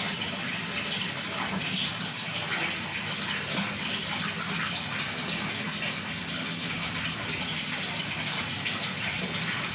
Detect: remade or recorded recorded